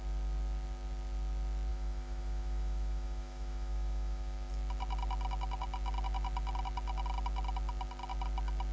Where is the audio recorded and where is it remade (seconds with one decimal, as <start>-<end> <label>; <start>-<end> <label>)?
0.0-1.7 recorded; 1.7-4.5 remade; 4.5-8.7 recorded